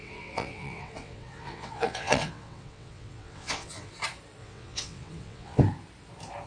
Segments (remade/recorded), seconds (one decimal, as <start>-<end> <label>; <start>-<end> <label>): 0.0-3.9 remade; 3.9-4.4 recorded; 4.4-5.6 remade; 5.6-6.5 recorded